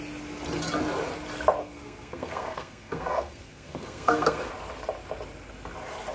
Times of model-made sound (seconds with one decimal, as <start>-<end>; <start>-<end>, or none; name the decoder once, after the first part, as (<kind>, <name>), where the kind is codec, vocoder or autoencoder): 1.6-4.5 (codec, SNAC)